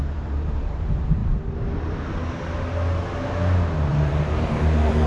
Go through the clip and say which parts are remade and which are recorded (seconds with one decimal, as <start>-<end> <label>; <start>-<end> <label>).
0.0-1.2 remade; 1.2-3.9 recorded; 3.9-5.1 remade